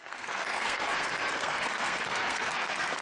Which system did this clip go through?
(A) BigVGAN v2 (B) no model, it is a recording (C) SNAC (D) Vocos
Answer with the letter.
C